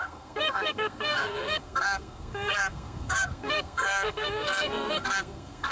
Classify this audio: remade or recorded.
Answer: remade